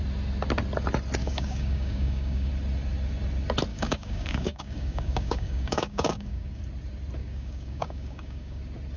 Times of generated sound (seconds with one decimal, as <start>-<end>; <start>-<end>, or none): 1.2-2.5; 3.7-6.6; 7.2-8.6